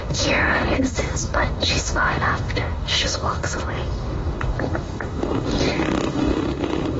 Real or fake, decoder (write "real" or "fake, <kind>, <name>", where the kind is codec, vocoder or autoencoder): fake, autoencoder, DAC-VAE